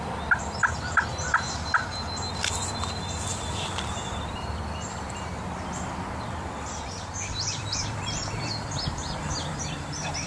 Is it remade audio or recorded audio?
remade